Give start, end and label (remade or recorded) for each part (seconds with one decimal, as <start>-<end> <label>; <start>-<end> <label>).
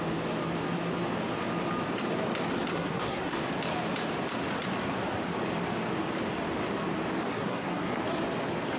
0.0-2.7 recorded; 2.7-3.4 remade; 3.4-7.3 recorded; 7.3-8.0 remade; 8.0-8.8 recorded